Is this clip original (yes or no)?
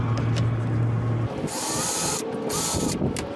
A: yes